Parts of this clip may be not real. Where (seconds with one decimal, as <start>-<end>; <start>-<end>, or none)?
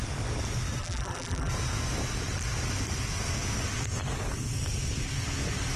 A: 0.8-1.5